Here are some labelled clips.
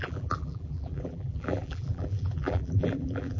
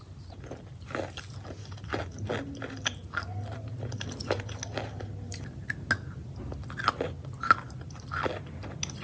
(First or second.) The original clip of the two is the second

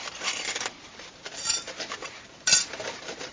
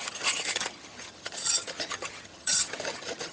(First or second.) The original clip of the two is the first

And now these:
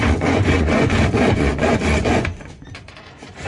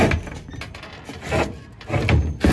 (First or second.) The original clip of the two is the second